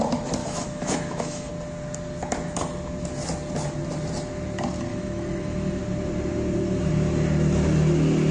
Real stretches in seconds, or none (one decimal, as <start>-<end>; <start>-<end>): 0.0-0.4; 1.5-4.9; 5.8-8.3